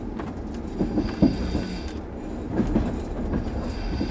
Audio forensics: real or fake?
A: real